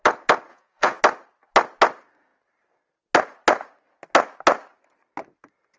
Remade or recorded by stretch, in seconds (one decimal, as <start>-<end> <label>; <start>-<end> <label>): 0.0-0.5 recorded; 0.5-1.0 remade; 1.0-5.8 recorded